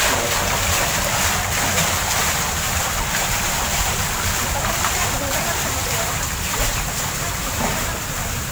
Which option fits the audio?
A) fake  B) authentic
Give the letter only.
A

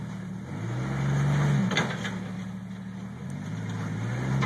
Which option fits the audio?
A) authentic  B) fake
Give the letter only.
A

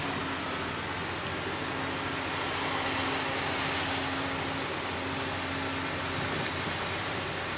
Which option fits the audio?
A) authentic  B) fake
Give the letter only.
A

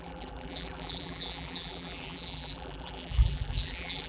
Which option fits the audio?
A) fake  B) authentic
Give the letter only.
A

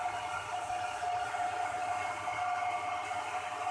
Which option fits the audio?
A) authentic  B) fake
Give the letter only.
B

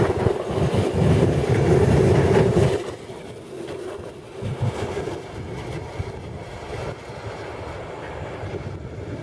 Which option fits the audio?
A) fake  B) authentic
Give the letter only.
B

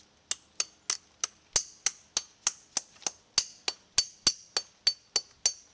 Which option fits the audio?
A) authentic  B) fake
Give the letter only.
A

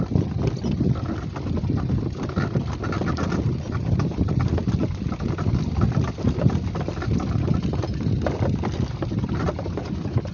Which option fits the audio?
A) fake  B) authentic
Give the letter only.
B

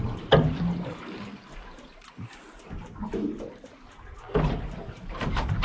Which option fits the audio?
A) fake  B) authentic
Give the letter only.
A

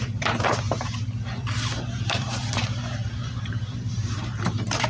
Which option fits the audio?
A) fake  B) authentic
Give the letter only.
A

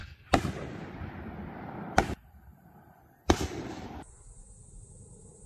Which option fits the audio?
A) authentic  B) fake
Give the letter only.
B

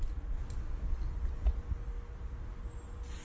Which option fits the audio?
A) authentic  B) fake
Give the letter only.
A